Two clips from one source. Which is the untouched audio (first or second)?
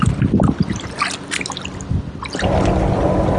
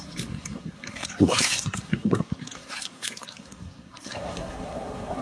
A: first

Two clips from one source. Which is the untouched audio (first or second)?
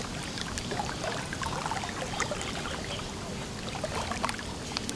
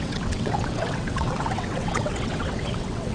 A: first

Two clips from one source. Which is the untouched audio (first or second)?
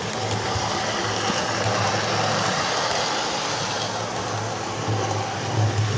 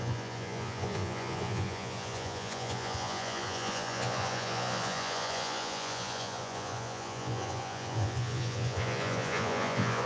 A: first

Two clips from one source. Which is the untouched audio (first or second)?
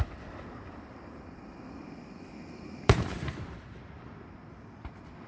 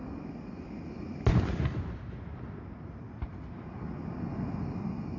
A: second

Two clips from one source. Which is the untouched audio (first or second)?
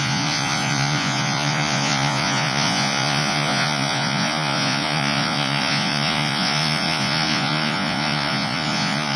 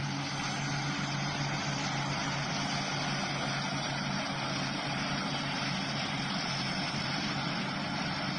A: second